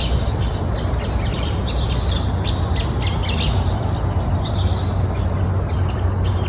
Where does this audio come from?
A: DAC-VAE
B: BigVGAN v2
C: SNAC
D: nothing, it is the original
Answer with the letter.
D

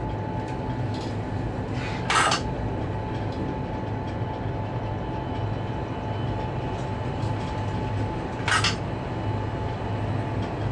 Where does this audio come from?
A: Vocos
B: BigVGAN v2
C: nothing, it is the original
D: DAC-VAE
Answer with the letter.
C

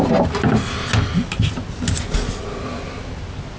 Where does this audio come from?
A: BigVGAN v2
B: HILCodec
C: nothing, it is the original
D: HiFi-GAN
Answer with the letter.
C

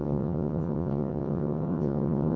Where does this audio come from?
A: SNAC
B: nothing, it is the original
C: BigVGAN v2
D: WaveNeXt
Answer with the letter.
D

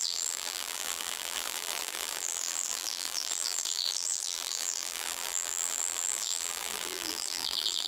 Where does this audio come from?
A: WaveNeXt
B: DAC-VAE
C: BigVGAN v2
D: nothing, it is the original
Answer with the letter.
C